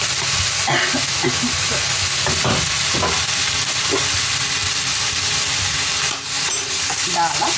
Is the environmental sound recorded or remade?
recorded